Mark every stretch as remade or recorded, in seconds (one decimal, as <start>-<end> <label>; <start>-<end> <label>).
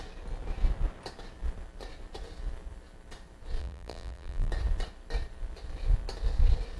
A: 0.0-3.6 recorded; 3.6-4.5 remade; 4.5-6.8 recorded